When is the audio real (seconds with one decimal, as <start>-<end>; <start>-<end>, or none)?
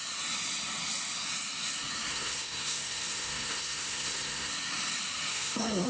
0.0-2.1; 4.5-5.3